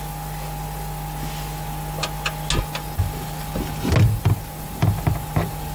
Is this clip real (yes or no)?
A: yes